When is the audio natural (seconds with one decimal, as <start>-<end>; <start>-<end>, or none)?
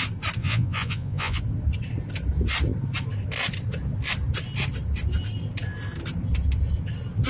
0.0-0.4; 1.4-7.3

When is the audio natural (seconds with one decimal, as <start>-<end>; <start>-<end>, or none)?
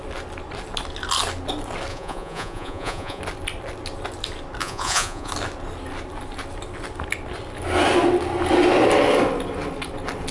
0.0-1.9; 3.2-4.6; 5.3-10.3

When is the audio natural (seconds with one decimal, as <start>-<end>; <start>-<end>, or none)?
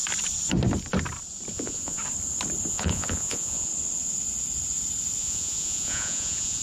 0.0-1.5; 2.0-2.7; 3.7-5.2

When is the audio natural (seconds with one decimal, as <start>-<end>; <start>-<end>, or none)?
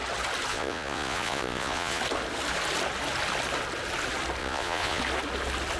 0.0-0.5; 2.0-4.4; 5.0-5.8